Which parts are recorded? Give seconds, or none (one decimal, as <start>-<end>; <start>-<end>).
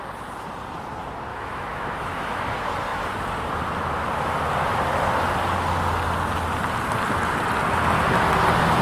0.0-1.3; 2.4-8.8